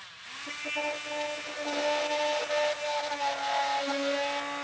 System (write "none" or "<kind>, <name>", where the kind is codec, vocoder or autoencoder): none